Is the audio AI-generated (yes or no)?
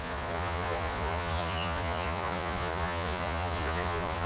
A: yes